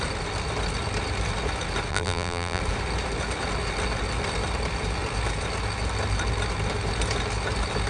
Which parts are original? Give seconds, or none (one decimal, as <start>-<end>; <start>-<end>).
0.0-1.9; 2.6-7.9